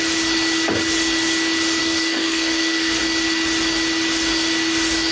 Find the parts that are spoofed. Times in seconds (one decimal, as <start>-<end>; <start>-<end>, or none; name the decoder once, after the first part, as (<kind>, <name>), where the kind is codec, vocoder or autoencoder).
1.8-3.0 (codec, SNAC)